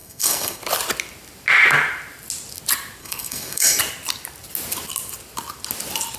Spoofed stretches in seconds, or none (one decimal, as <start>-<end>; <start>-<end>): 0.0-0.6; 3.0-3.8